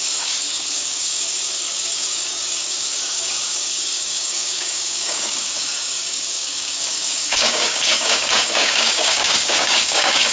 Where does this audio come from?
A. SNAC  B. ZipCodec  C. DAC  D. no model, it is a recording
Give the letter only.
C